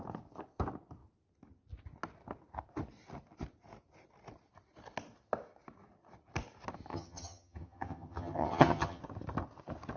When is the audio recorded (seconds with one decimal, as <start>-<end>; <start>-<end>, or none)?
0.0-6.9; 9.0-10.0